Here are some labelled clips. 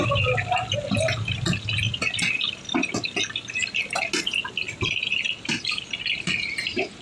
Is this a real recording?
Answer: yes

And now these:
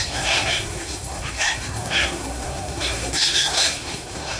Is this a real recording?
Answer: no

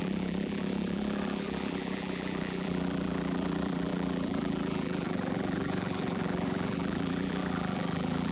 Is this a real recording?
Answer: no